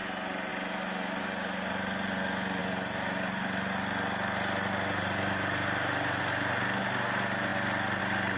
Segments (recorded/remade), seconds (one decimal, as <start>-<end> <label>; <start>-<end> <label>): 0.0-0.5 recorded; 0.5-1.2 remade; 1.2-2.6 recorded; 2.6-6.2 remade; 6.2-7.5 recorded; 7.5-8.0 remade; 8.0-8.4 recorded